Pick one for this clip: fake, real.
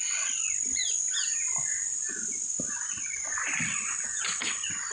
real